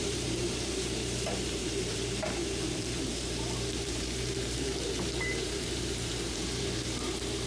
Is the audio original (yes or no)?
no